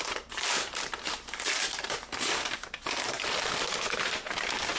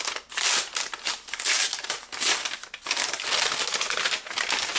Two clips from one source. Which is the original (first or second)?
second